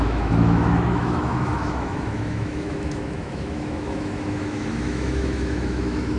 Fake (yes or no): yes